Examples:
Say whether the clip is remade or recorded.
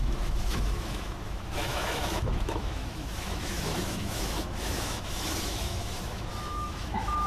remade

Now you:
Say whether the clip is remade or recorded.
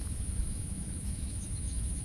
remade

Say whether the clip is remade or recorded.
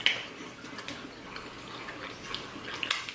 recorded